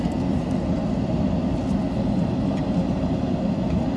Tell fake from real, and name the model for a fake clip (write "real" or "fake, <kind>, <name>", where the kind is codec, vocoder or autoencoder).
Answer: real